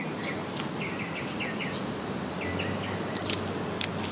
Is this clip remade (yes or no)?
no